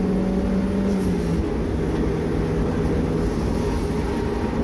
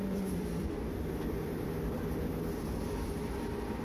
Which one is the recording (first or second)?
first